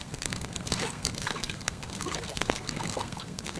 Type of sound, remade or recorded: remade